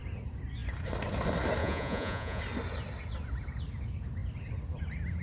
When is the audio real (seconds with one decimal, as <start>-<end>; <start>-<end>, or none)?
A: 0.0-1.6; 2.4-5.2